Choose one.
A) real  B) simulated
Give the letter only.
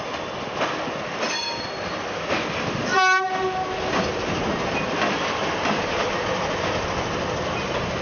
A